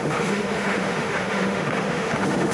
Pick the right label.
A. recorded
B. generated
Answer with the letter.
B